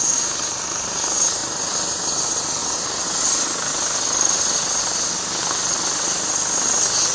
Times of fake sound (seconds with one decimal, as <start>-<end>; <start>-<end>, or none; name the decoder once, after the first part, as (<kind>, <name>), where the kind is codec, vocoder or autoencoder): none